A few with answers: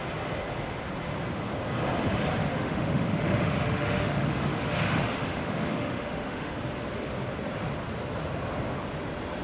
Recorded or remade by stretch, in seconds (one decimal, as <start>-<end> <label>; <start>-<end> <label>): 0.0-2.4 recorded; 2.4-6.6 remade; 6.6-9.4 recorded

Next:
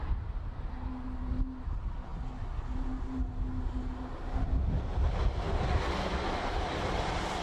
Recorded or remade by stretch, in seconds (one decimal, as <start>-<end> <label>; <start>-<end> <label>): 0.0-7.4 recorded

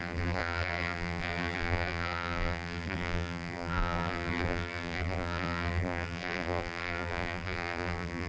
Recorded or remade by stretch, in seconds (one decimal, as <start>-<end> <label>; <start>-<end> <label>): 0.0-8.3 remade

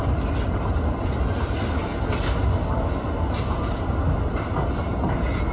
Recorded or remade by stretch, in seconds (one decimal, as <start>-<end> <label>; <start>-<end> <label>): 0.0-5.5 recorded

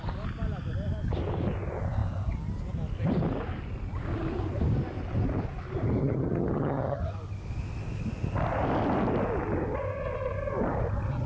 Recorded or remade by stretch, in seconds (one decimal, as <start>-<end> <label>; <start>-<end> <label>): 0.0-6.0 recorded; 6.0-7.0 remade; 7.0-11.3 recorded

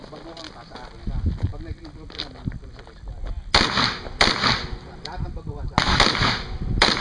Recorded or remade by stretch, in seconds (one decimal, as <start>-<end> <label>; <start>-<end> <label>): 0.0-7.0 recorded